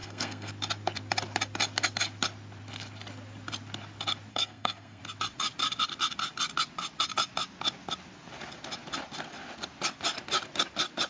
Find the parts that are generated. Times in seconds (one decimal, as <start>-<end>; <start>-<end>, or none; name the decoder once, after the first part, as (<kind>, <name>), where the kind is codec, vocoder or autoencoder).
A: 0.0-0.5 (codec, SNAC); 4.3-5.0